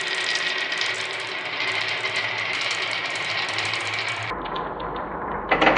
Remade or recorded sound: remade